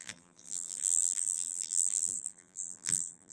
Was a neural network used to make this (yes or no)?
yes